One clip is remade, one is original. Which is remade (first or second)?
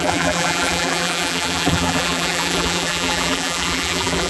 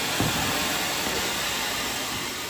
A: first